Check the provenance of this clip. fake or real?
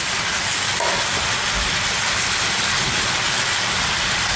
real